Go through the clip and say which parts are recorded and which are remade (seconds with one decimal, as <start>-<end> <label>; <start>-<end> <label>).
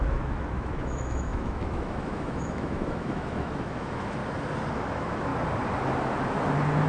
0.0-4.2 remade; 4.2-4.7 recorded; 4.7-5.3 remade; 5.3-6.9 recorded